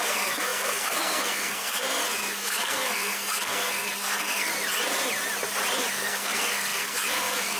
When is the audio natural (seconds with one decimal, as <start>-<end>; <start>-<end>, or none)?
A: 4.5-5.9